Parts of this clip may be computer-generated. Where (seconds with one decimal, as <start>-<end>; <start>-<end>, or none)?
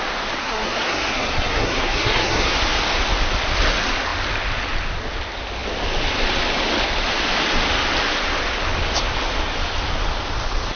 0.4-2.5